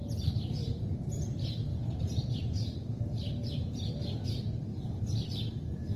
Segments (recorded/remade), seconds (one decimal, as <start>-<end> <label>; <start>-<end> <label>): 0.0-1.7 recorded; 1.7-3.0 remade; 3.0-6.0 recorded